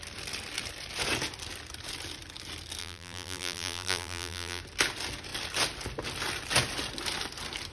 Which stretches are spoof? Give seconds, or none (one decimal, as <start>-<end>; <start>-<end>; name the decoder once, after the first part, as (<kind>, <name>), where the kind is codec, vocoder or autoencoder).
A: 2.8-4.6 (vocoder, BigVGAN v2)